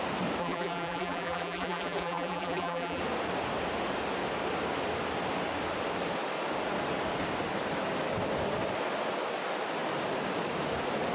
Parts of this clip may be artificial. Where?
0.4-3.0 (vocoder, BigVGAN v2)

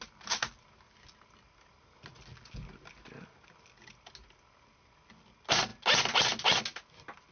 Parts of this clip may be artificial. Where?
none

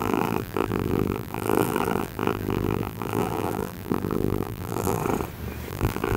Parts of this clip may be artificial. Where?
0.0-5.0 (vocoder, BigVGAN v2); 5.7-6.2

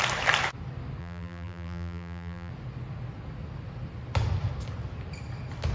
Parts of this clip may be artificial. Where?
1.0-2.5 (vocoder, BigVGAN v2)

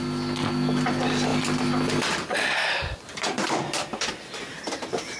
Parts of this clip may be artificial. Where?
1.3-4.4 (vocoder, BigVGAN v2)

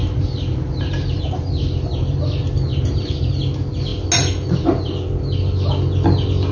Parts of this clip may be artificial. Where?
0.0-2.2 (vocoder, BigVGAN v2); 2.7-3.3

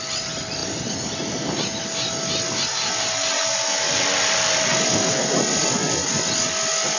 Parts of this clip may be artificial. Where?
0.0-0.6 (vocoder, BigVGAN v2); 4.3-4.7